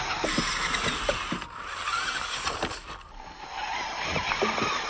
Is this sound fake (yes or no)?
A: no